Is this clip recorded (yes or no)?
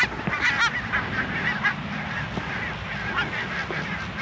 yes